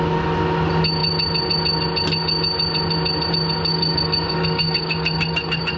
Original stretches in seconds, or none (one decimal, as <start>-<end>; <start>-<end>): 0.0-3.7